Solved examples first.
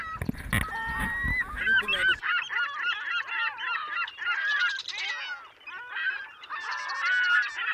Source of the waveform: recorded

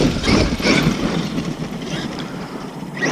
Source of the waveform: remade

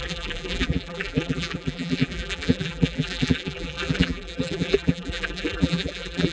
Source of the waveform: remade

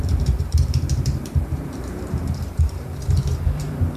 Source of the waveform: remade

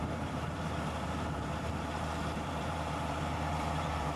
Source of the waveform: remade